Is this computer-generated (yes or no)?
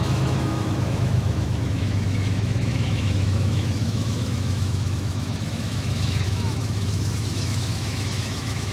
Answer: yes